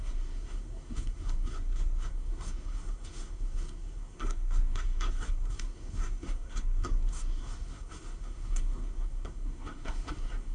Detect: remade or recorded remade